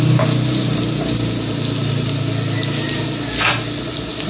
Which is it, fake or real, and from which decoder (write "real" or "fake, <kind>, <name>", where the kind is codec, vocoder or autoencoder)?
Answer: real